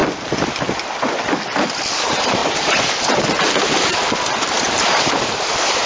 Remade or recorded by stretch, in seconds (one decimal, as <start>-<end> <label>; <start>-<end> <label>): 0.0-2.0 recorded; 2.0-2.4 remade; 2.4-4.6 recorded; 4.6-5.9 remade